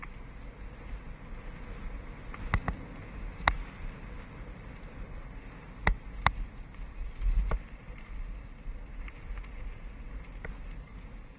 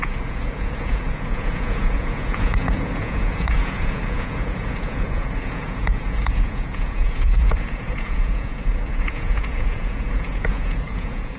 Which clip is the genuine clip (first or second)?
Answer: first